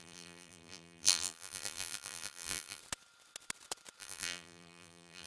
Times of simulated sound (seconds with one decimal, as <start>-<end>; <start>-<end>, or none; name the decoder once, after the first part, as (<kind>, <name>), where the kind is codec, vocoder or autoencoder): 0.0-2.8 (vocoder, BigVGAN v2); 4.0-5.3